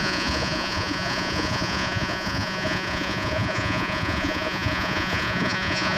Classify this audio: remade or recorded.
remade